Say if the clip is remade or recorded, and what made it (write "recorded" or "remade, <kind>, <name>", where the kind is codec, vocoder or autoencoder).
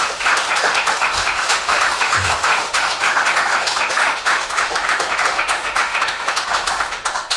remade, autoencoder, DAC-VAE